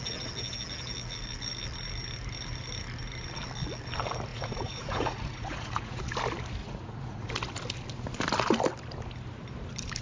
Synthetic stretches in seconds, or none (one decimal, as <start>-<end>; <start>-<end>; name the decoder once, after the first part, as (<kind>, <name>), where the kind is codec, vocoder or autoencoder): 4.3-6.0 (vocoder, Vocos); 6.6-7.3